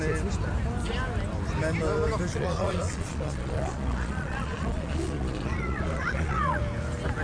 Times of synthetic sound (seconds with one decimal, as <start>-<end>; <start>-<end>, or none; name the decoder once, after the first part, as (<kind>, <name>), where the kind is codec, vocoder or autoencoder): 2.3-6.6 (vocoder, Vocos)